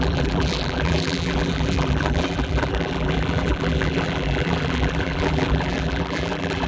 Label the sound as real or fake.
fake